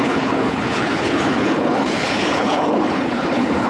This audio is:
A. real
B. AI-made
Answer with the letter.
B